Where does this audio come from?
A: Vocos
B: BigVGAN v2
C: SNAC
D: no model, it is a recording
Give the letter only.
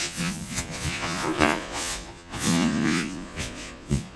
A